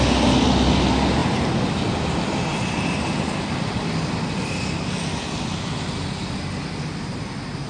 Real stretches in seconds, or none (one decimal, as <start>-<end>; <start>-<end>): 0.0-1.2; 2.0-2.5; 4.6-7.7